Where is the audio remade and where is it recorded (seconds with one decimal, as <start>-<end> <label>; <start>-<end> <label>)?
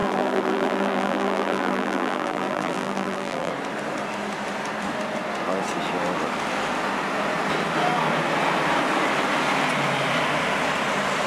0.0-3.5 remade; 3.5-11.3 recorded